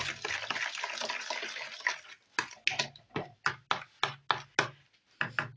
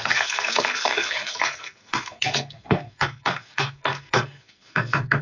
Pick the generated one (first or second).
second